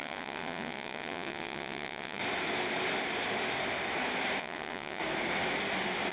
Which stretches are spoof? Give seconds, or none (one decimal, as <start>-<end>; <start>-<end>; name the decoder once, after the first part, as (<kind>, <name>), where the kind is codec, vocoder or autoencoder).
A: 0.0-2.2 (vocoder, WaveNeXt); 4.4-5.0